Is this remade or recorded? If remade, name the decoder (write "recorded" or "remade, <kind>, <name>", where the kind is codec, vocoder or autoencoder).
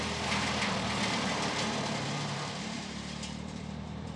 remade, vocoder, BigVGAN v2